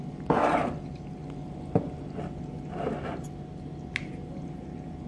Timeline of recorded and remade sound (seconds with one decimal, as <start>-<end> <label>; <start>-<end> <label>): 0.0-5.1 recorded